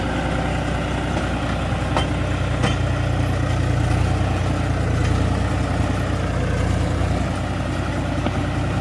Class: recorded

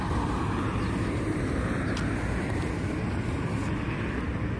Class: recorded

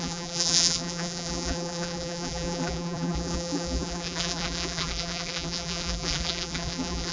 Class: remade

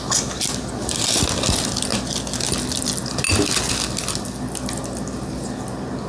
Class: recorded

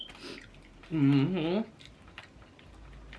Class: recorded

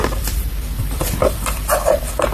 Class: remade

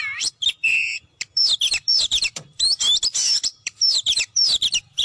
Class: remade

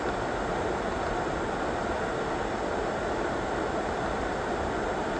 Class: recorded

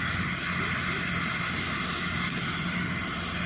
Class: recorded